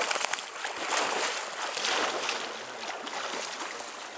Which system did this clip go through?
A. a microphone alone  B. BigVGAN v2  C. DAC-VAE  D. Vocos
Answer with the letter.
A